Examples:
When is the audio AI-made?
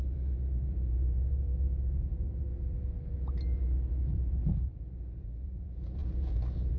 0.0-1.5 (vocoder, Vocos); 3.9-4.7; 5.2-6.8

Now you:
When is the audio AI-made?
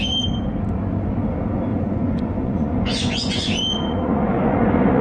1.7-5.0 (vocoder, Vocos)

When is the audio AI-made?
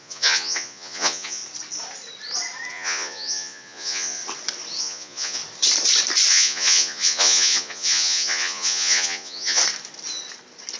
0.0-1.4 (vocoder, Vocos); 2.7-4.2; 4.8-5.4; 6.3-9.6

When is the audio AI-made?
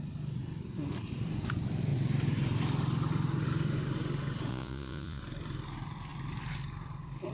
4.5-5.2 (vocoder, Vocos)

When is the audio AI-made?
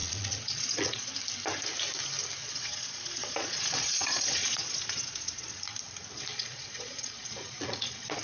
0.0-1.1 (vocoder, Vocos); 2.4-5.6; 6.3-8.2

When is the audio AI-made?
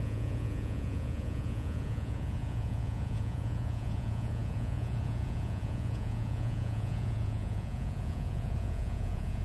0.0-9.4 (vocoder, Vocos)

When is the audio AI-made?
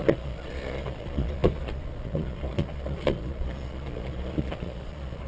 0.0-5.3 (vocoder, Vocos)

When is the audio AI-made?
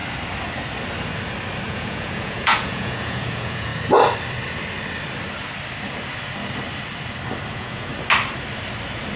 1.7-3.7 (vocoder, Vocos); 7.5-7.9